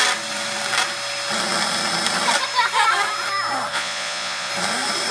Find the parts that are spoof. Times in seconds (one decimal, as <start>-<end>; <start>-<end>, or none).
3.7-4.5